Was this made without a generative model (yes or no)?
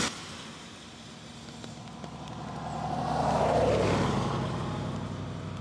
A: no